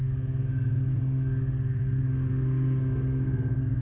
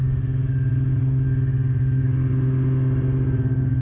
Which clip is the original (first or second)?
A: second